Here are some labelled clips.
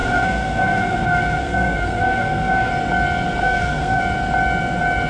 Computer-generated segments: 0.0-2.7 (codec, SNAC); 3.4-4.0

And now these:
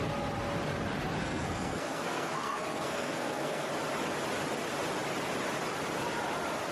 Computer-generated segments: 1.2-3.7 (codec, SNAC)